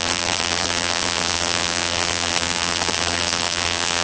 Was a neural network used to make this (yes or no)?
yes